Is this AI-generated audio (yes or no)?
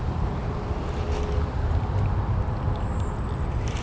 no